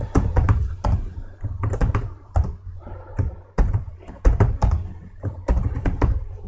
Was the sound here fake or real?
fake